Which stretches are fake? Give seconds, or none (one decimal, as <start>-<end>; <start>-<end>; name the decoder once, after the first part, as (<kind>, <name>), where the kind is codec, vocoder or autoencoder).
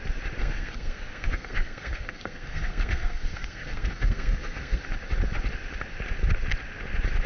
0.4-4.8 (codec, SNAC)